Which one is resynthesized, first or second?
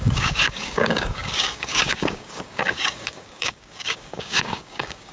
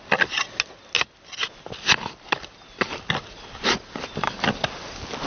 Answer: first